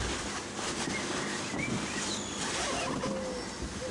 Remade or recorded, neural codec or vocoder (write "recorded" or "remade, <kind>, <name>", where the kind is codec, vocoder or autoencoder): recorded